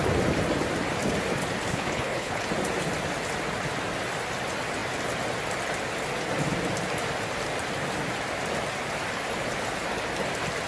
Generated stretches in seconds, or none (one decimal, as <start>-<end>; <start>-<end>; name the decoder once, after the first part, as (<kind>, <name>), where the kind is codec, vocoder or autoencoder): 1.7-2.4 (codec, HILCodec)